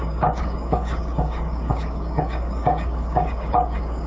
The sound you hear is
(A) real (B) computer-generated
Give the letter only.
B